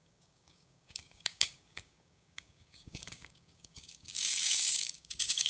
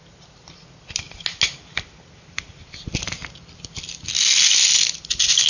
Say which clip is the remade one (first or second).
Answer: first